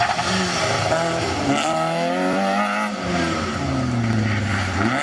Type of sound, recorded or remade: recorded